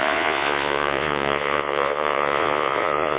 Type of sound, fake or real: fake